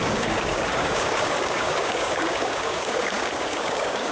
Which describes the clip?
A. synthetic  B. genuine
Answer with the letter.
A